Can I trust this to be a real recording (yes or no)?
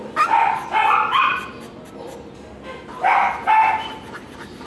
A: yes